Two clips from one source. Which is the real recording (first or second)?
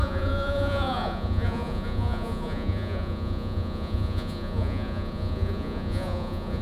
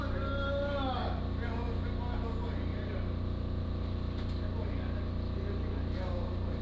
second